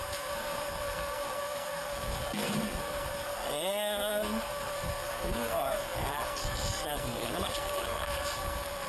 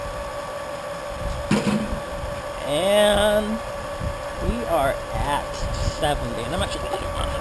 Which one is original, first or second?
second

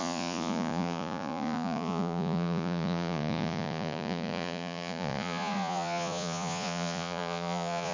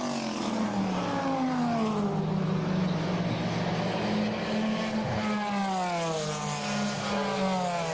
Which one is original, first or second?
second